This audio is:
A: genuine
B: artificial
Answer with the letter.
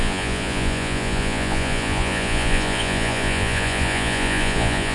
B